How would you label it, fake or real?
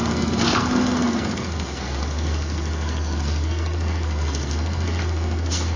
fake